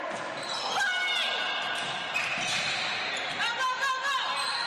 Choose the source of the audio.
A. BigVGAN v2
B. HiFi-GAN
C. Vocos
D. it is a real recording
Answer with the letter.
D